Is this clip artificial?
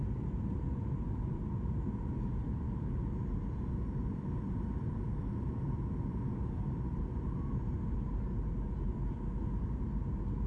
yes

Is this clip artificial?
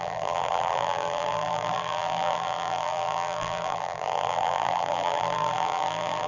yes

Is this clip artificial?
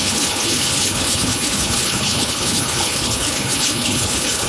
yes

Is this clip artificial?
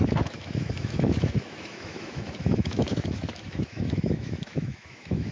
yes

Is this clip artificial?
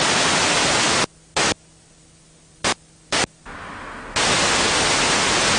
no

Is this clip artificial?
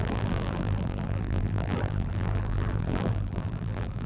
yes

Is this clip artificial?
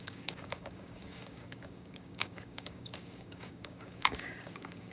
yes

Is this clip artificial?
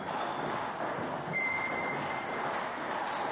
no